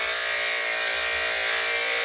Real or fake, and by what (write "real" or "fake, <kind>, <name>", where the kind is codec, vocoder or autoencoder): real